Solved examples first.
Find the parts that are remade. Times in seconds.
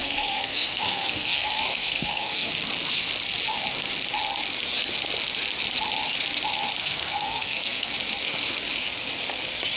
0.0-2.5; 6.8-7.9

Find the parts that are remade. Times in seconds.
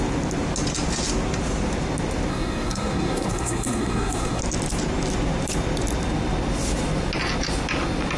2.3-4.4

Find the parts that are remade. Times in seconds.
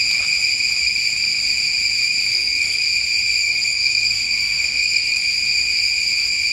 2.3-2.8; 3.4-5.2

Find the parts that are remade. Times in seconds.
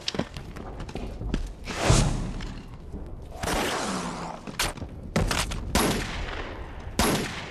0.0-0.4; 2.6-3.1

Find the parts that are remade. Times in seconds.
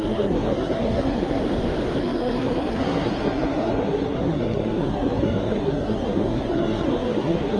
0.0-1.4; 2.0-7.6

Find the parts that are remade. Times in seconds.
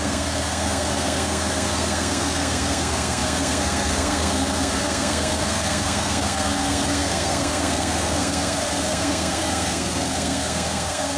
0.0-11.2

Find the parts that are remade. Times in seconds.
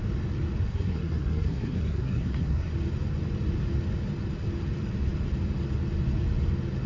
0.7-2.7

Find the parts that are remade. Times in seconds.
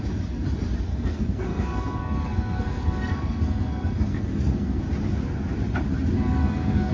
0.9-4.8; 6.4-6.9